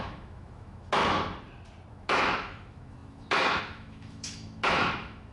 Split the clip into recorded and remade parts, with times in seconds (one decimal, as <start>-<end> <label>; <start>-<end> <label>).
0.0-1.0 remade; 1.0-1.9 recorded; 1.9-5.3 remade